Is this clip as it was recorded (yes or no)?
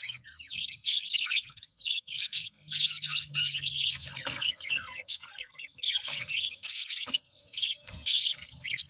no